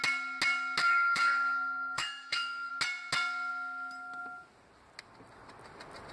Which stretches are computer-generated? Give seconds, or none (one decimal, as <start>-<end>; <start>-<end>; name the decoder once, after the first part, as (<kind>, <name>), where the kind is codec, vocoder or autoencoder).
0.8-2.7 (codec, SNAC)